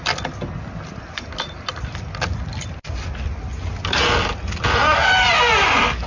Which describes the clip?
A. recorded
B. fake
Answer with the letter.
A